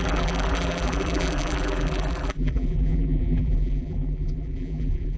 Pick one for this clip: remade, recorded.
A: remade